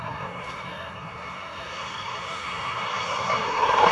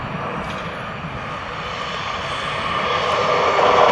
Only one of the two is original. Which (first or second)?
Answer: second